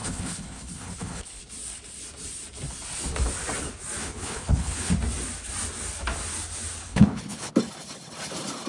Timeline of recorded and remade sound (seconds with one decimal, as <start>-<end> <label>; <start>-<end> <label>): 0.0-1.4 remade; 1.4-4.0 recorded; 4.0-4.9 remade; 4.9-6.8 recorded; 6.8-7.5 remade; 7.5-8.7 recorded